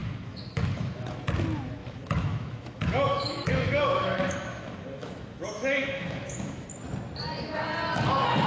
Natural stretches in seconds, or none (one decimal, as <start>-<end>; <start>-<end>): 1.1-1.8; 6.5-8.5